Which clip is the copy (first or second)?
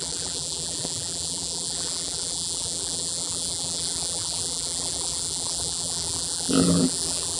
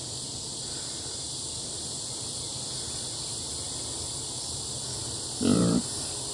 first